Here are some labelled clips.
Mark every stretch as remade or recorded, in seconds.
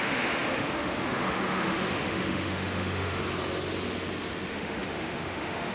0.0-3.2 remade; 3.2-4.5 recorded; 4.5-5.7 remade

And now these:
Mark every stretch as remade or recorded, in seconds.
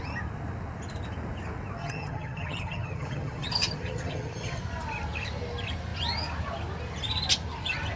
0.0-1.8 recorded; 1.8-4.6 remade; 4.6-8.0 recorded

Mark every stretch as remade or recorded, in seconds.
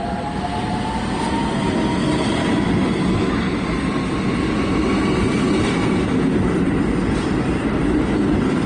0.0-1.4 remade; 1.4-5.6 recorded; 5.6-8.7 remade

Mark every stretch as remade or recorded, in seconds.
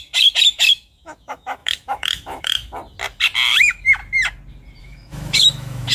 0.0-2.8 remade; 2.8-3.5 recorded; 3.5-4.0 remade; 4.0-4.8 recorded; 4.8-5.9 remade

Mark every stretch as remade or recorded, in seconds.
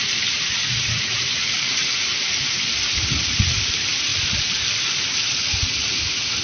0.0-0.6 recorded; 0.6-1.2 remade; 1.2-6.4 recorded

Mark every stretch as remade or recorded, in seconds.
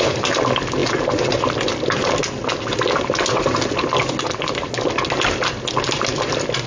0.0-6.7 recorded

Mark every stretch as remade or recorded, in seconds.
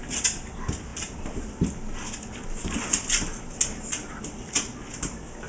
0.0-5.5 recorded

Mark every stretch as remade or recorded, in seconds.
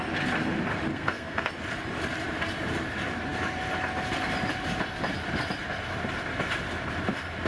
0.0-0.9 recorded; 0.9-1.5 remade; 1.5-7.5 recorded